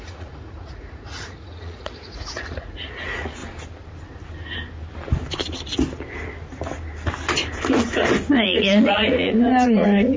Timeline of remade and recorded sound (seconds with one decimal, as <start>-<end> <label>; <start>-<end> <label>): 0.0-3.4 remade; 3.4-8.3 recorded; 8.3-10.2 remade